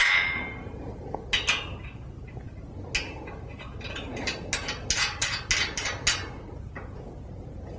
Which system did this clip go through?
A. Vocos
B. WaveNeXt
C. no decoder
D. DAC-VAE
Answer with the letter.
C